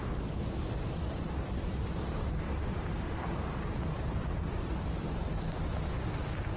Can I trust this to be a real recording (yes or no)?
no